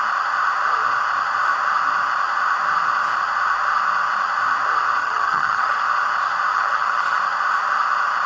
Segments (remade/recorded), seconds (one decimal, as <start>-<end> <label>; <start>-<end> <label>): 0.0-5.0 recorded; 5.0-5.8 remade; 5.8-6.5 recorded; 6.5-7.2 remade; 7.2-8.3 recorded